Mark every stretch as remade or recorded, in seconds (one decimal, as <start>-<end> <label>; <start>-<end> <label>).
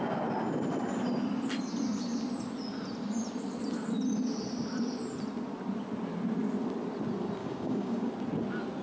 0.0-7.4 recorded; 7.4-8.1 remade; 8.1-8.8 recorded